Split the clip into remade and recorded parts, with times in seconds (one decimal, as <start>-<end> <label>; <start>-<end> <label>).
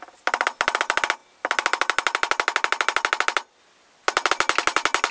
0.0-5.1 recorded